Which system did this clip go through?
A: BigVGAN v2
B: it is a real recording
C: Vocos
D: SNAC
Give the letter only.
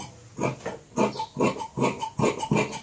B